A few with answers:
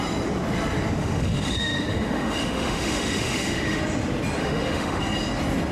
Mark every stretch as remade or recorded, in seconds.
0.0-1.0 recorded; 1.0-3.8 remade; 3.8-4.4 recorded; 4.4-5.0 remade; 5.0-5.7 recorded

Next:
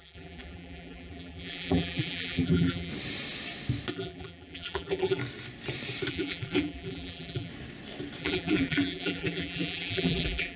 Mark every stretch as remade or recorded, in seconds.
0.0-2.9 remade; 2.9-3.9 recorded; 3.9-5.2 remade; 5.2-6.1 recorded; 6.1-7.5 remade; 7.5-8.2 recorded; 8.2-10.6 remade

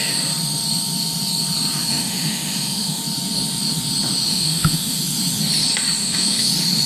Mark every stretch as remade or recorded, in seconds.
0.0-1.8 recorded; 1.8-3.0 remade; 3.0-4.3 recorded; 4.3-5.0 remade; 5.0-6.0 recorded; 6.0-6.5 remade; 6.5-6.9 recorded

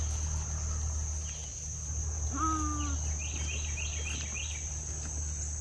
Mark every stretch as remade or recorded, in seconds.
0.0-5.6 recorded

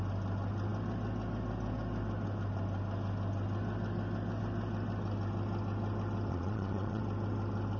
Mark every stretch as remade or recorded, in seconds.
0.0-6.3 recorded; 6.3-7.0 remade; 7.0-7.8 recorded

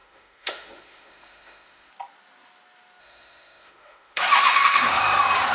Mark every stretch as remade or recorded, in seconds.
0.0-1.9 remade; 1.9-3.0 recorded; 3.0-5.0 remade; 5.0-5.5 recorded

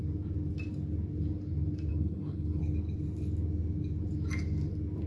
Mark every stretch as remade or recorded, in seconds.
0.0-1.9 recorded; 1.9-2.6 remade; 2.6-5.1 recorded

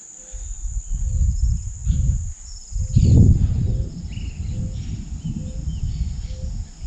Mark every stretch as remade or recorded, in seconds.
0.0-6.9 recorded